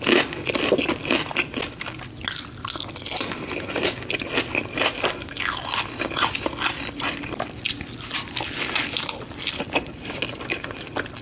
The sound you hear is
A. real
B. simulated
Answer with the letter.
A